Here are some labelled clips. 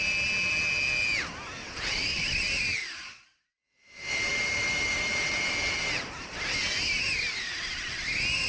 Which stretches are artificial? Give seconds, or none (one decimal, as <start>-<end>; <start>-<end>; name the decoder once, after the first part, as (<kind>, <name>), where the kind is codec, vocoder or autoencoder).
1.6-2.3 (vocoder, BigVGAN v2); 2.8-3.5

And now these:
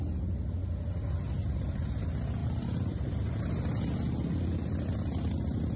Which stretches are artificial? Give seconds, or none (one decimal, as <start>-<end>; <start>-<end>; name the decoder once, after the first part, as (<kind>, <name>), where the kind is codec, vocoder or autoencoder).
2.4-3.4 (vocoder, BigVGAN v2)

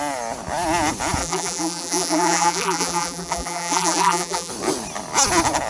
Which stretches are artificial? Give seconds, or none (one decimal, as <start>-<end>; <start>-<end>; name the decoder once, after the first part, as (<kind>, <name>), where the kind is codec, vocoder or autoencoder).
1.2-4.5 (vocoder, BigVGAN v2)